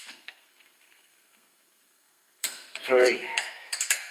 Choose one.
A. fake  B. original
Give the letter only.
A